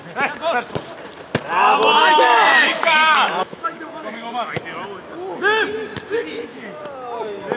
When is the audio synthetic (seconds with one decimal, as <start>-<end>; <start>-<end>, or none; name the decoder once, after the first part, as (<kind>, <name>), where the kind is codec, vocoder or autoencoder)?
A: 2.0-4.6 (autoencoder, DAC-VAE); 6.3-6.8